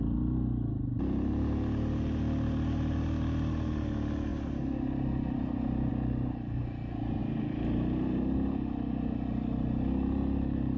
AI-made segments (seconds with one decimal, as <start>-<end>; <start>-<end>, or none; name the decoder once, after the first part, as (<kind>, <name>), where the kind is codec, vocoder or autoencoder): none